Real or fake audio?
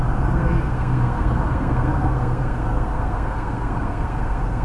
fake